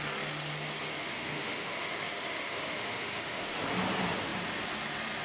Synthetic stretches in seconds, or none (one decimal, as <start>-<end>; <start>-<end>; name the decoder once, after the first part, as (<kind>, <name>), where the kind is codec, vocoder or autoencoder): 1.0-3.6 (autoencoder, DAC-VAE)